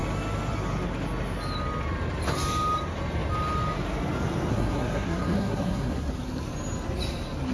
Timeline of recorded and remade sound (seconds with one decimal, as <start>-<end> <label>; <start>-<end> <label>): 0.0-4.5 recorded; 4.5-6.1 remade; 6.1-7.5 recorded